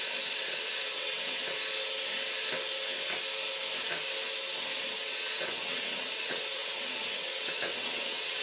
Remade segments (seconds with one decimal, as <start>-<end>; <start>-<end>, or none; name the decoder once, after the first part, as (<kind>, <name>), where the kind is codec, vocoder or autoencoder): 0.0-1.4 (vocoder, WaveNeXt); 4.9-8.4